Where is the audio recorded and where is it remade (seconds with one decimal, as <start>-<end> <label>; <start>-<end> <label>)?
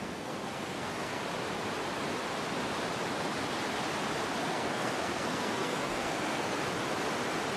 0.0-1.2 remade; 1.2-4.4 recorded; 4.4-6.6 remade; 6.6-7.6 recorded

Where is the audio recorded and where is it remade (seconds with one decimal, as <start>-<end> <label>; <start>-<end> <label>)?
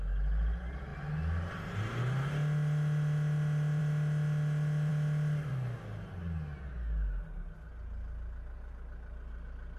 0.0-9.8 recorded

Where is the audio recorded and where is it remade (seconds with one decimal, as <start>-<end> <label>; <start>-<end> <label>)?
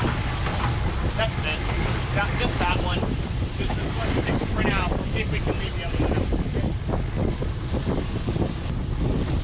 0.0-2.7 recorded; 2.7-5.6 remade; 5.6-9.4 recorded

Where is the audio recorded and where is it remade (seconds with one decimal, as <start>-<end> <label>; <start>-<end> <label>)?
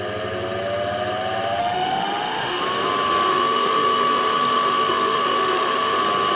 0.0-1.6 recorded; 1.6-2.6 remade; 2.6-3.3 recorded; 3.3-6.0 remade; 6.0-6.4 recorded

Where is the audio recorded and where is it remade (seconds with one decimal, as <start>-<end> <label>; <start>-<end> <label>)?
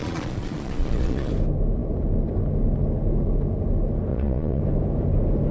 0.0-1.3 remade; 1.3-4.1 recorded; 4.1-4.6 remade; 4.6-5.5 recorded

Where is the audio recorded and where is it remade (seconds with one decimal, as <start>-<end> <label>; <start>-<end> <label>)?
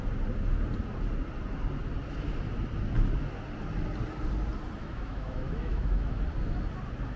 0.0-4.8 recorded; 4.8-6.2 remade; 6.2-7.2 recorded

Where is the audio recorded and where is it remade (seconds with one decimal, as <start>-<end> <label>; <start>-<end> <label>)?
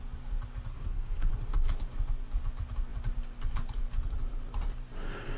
0.0-0.7 recorded; 0.7-1.3 remade; 1.3-5.4 recorded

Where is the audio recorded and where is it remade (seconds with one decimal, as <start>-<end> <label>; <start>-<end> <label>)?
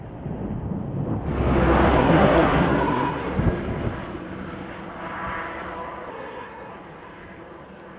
0.0-1.9 recorded; 1.9-3.4 remade; 3.4-6.1 recorded; 6.1-6.7 remade; 6.7-8.0 recorded